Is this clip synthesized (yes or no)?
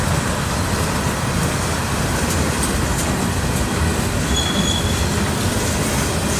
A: no